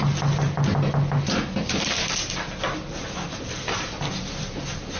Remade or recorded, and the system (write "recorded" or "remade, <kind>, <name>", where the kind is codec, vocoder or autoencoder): recorded